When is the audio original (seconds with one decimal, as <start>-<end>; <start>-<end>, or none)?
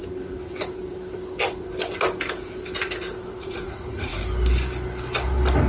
0.0-3.4; 4.1-5.7